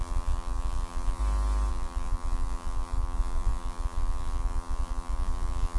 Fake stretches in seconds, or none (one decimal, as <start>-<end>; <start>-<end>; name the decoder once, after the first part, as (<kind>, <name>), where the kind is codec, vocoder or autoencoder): 0.0-1.2 (vocoder, BigVGAN v2); 1.7-5.8